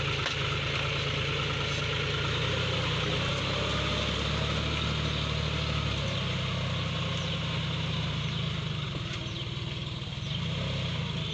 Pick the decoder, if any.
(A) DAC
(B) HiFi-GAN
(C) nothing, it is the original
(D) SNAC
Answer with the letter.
C